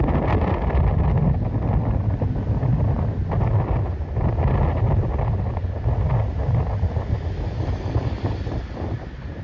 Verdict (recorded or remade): recorded